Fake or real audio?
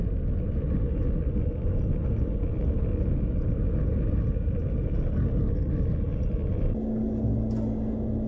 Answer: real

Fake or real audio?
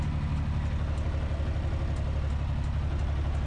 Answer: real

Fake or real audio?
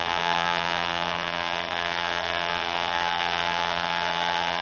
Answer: fake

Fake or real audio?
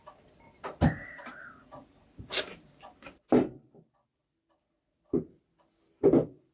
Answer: real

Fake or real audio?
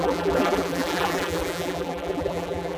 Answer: fake